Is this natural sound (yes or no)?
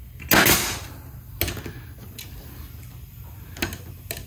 yes